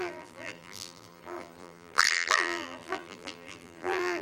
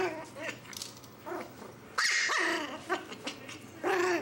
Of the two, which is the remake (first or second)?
first